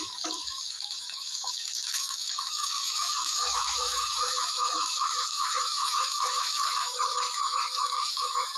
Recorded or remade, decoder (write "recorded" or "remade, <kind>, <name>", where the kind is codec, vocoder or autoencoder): remade, autoencoder, DAC-VAE